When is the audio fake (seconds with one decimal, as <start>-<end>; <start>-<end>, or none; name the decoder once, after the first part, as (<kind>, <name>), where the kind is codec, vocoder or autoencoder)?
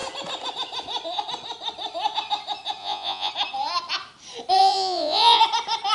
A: 2.8-3.3 (vocoder, Vocos); 4.6-5.4